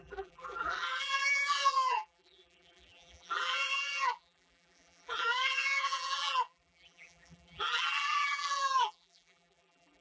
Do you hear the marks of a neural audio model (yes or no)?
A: yes